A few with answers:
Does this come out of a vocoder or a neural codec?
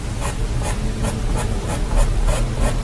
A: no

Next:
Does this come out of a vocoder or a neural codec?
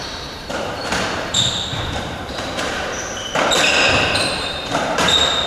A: yes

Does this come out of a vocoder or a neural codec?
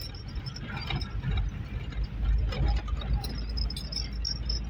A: no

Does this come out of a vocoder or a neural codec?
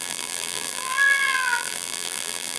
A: yes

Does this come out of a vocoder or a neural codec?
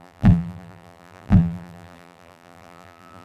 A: yes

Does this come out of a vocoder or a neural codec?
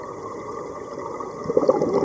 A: no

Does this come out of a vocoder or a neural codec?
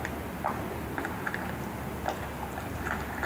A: yes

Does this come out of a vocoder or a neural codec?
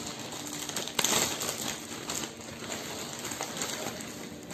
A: no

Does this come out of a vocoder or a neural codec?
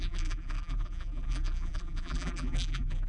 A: yes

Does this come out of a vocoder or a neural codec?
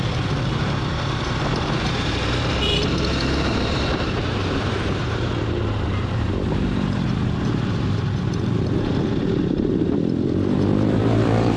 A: yes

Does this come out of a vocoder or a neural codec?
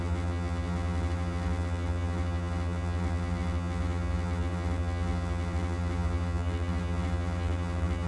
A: yes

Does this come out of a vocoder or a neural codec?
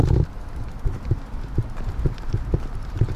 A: yes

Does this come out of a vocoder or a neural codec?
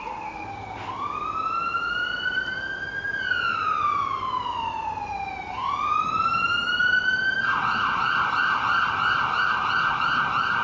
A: no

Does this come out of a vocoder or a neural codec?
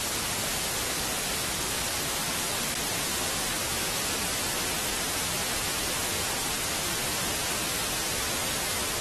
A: no